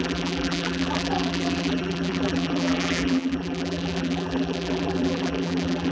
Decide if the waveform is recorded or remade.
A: remade